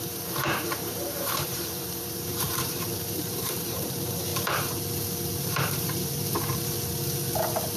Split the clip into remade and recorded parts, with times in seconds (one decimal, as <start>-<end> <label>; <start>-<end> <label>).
0.0-4.3 remade; 4.3-5.4 recorded; 5.4-6.1 remade; 6.1-7.8 recorded

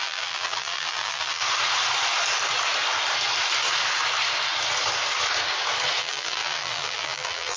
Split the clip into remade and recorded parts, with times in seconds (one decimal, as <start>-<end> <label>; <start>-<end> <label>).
0.0-1.4 remade; 1.4-6.0 recorded; 6.0-7.6 remade

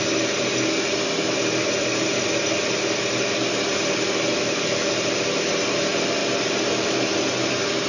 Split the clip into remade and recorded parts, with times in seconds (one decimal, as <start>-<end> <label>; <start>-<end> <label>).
0.0-7.9 recorded

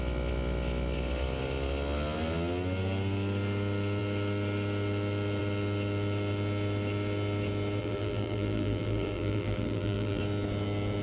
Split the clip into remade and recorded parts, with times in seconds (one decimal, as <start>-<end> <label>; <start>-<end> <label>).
0.0-7.8 recorded; 7.8-10.2 remade; 10.2-11.0 recorded

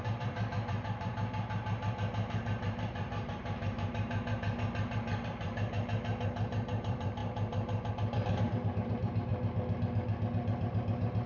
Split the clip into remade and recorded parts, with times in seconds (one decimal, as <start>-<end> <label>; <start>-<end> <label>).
0.0-9.3 remade; 9.3-10.3 recorded; 10.3-11.3 remade